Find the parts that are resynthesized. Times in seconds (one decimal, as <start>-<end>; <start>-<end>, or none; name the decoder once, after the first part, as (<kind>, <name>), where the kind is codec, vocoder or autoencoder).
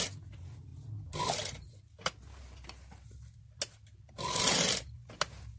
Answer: none